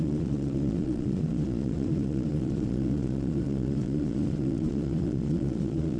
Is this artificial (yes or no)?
yes